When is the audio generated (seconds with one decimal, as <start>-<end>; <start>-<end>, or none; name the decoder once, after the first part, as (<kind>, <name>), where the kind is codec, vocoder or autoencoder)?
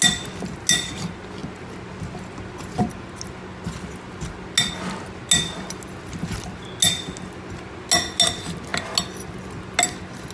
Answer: none